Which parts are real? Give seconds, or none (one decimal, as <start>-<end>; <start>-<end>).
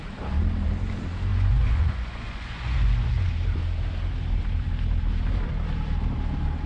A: 0.0-1.3; 3.2-6.7